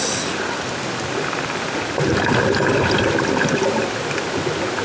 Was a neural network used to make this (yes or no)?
no